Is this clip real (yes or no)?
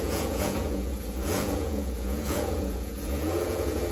no